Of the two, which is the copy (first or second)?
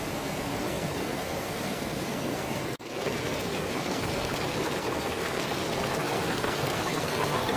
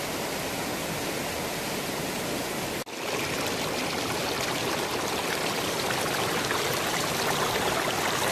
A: first